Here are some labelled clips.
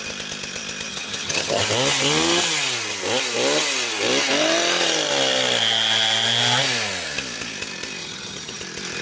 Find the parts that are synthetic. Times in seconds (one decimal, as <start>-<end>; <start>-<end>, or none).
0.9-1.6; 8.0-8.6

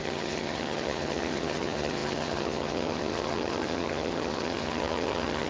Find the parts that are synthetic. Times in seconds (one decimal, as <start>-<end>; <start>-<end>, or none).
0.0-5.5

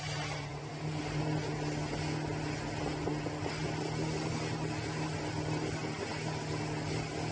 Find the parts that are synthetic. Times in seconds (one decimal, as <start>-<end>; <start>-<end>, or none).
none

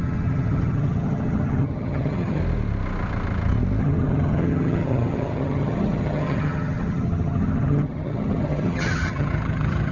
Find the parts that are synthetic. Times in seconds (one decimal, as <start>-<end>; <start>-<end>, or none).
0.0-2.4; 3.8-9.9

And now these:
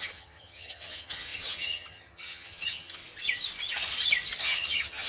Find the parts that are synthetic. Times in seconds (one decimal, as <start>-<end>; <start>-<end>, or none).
0.0-3.0; 4.4-5.1

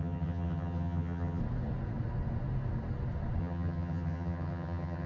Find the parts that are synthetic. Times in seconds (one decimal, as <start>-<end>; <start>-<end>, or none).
0.0-1.4; 3.4-5.1